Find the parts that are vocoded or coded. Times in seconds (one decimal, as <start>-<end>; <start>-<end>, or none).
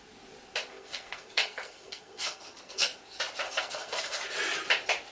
0.7-3.0; 3.4-4.2